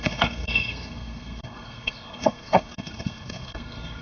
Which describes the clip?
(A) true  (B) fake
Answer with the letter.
B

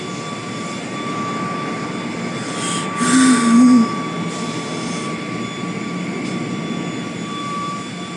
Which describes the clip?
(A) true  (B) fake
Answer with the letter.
A